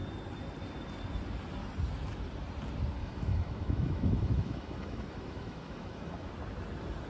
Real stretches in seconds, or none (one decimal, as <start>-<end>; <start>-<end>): 0.0-3.0; 6.3-7.1